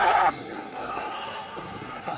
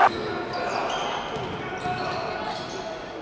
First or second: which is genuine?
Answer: second